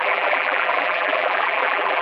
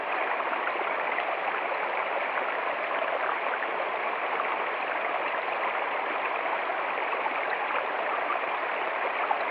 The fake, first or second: first